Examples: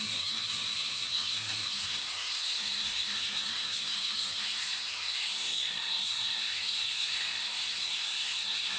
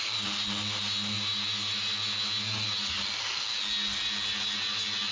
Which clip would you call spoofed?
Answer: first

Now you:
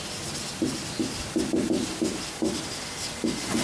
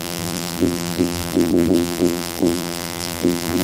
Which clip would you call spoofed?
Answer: second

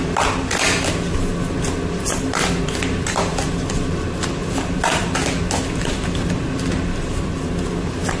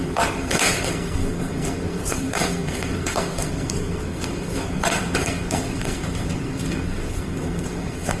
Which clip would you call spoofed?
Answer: second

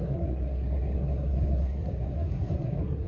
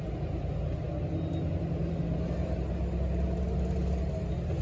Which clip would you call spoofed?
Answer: first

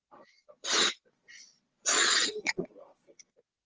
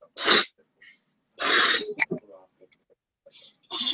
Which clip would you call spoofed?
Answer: first